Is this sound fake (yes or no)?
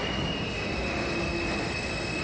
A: no